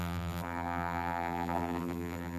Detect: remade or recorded remade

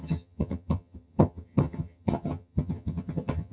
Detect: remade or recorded remade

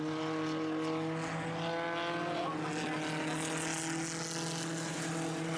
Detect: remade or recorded recorded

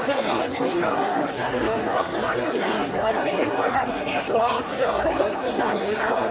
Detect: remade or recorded remade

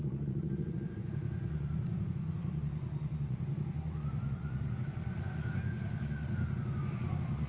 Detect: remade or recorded remade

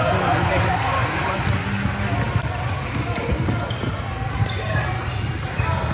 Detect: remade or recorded recorded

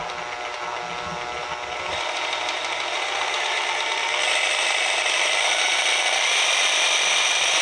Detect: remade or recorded recorded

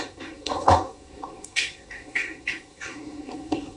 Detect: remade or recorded remade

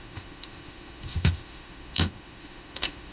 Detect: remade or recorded remade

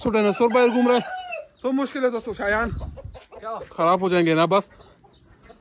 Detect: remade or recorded recorded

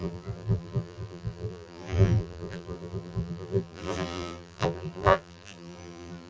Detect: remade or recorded remade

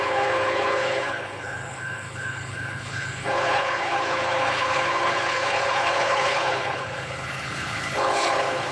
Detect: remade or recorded remade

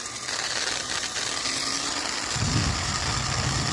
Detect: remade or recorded remade